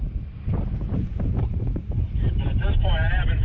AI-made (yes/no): yes